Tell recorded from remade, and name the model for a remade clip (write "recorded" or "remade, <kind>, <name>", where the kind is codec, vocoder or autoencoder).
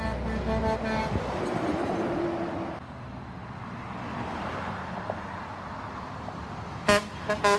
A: recorded